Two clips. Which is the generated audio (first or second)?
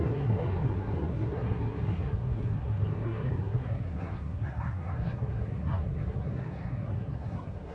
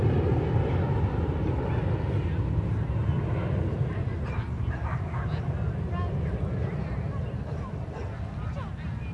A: first